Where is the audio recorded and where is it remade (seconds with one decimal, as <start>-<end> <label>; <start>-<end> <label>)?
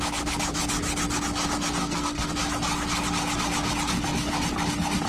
0.0-1.8 recorded; 1.8-2.3 remade; 2.3-5.1 recorded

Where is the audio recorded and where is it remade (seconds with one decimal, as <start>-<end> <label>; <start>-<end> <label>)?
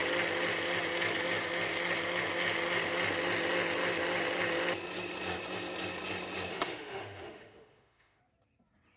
0.0-6.5 recorded; 6.5-8.2 remade; 8.2-9.0 recorded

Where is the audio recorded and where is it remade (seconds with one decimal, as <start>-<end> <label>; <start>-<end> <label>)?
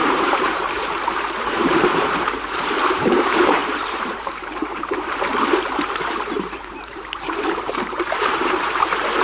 0.0-9.2 remade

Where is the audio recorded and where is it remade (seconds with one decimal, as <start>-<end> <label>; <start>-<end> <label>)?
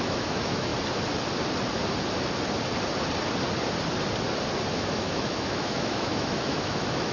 0.0-0.7 remade; 0.7-4.7 recorded; 4.7-7.1 remade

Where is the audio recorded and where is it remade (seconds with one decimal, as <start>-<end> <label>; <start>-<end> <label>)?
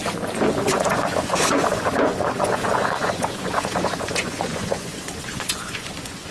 0.0-0.6 recorded; 0.6-6.3 remade